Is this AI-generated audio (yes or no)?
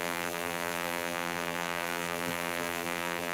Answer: yes